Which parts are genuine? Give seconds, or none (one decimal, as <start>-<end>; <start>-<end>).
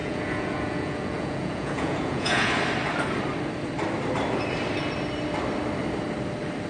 2.5-6.7